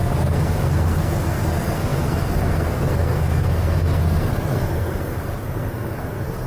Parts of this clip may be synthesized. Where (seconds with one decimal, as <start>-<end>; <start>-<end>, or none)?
0.0-6.5